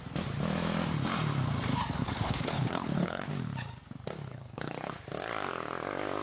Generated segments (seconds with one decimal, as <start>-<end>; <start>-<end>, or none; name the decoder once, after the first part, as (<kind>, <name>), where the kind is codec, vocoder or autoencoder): 2.0-3.3 (codec, HILCodec); 4.3-5.0